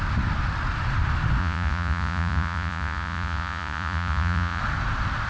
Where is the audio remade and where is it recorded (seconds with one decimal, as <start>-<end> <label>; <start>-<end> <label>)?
0.0-1.4 recorded; 1.4-4.6 remade; 4.6-5.3 recorded